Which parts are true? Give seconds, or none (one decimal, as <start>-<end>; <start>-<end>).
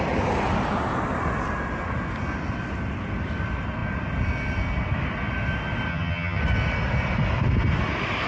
0.0-5.9; 6.4-8.3